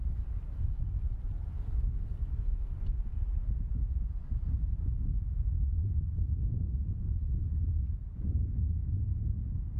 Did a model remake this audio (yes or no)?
no